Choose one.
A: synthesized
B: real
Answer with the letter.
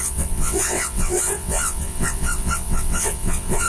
A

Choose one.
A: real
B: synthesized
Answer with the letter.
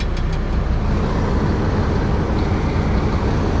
A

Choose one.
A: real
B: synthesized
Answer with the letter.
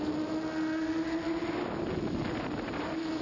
A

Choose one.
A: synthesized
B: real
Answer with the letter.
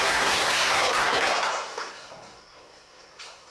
A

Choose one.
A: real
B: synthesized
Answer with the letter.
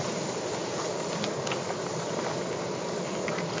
A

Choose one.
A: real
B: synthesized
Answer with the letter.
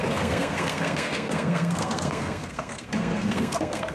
B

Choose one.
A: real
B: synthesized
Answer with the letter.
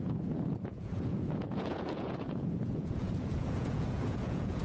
B